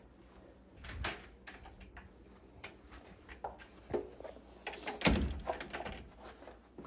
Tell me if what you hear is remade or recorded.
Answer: recorded